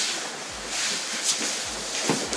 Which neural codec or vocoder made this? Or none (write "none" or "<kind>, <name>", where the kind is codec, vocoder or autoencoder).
none